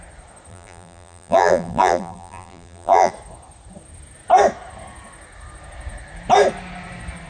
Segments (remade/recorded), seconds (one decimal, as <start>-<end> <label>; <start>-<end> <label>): 0.0-0.5 recorded; 0.5-3.1 remade; 3.1-7.3 recorded